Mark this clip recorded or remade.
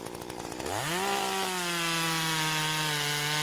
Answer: recorded